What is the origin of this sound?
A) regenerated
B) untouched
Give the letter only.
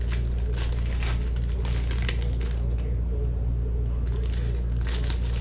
B